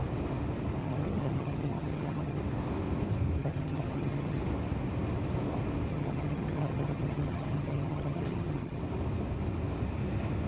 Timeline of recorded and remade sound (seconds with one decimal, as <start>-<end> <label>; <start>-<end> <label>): 0.0-0.8 recorded; 0.8-2.4 remade; 2.4-3.4 recorded; 3.4-4.4 remade; 4.4-5.9 recorded; 5.9-8.8 remade; 8.8-10.5 recorded